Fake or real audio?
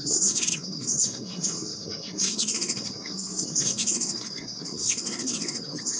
fake